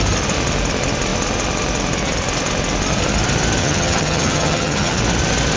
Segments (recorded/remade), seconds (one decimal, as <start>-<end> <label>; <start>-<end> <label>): 0.0-3.6 recorded; 3.6-5.0 remade; 5.0-5.6 recorded